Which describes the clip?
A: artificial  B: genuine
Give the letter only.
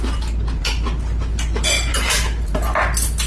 B